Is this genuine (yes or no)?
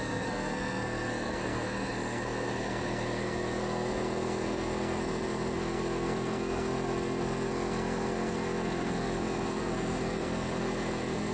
no